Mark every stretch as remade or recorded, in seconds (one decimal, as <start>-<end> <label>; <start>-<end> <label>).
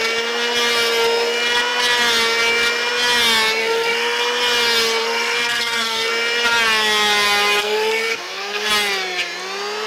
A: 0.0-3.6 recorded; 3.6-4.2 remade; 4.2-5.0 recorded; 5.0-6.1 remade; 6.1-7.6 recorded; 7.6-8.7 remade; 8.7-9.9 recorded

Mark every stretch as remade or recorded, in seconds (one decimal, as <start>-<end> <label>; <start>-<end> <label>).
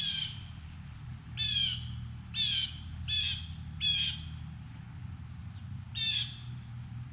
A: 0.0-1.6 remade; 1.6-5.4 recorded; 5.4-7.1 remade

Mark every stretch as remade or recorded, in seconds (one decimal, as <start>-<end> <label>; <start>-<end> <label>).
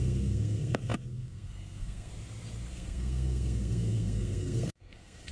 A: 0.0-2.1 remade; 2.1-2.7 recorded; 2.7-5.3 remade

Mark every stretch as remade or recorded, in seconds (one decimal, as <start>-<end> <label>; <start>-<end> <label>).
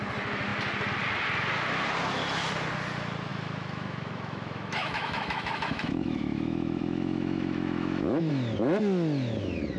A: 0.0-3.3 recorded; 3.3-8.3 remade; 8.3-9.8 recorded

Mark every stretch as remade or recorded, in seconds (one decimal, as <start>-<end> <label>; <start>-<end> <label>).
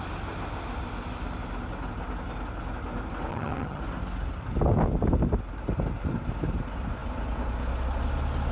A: 0.0-3.3 recorded; 3.3-3.8 remade; 3.8-8.5 recorded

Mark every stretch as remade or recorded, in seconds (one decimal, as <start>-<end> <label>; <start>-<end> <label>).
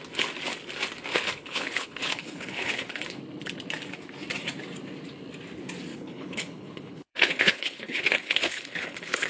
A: 0.0-1.1 recorded; 1.1-3.2 remade; 3.2-5.9 recorded; 5.9-9.3 remade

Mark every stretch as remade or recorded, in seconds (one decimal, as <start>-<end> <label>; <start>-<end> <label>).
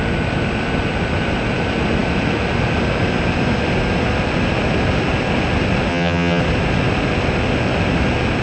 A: 0.0-5.9 recorded; 5.9-6.4 remade; 6.4-8.4 recorded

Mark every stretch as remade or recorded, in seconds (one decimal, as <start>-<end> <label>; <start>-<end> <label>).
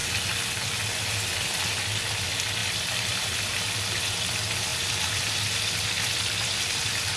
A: 0.0-2.6 recorded; 2.6-3.8 remade; 3.8-4.7 recorded; 4.7-7.2 remade